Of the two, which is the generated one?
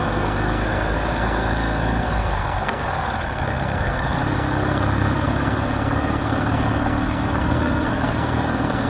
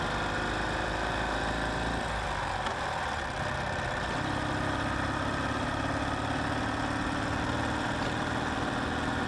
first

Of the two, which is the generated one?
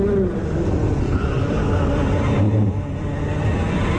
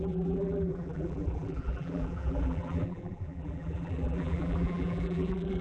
second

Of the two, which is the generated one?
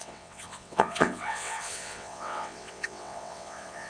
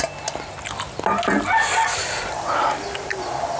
first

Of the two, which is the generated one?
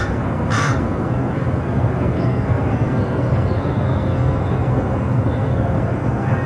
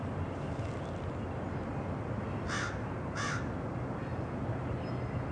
first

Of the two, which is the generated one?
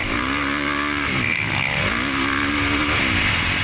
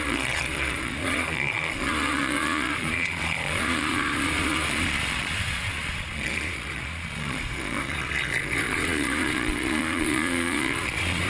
second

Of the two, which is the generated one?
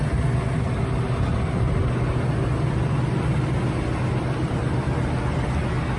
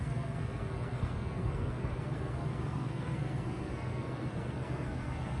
second